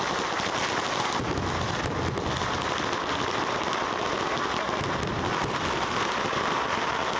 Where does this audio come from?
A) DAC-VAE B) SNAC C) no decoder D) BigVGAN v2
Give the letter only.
C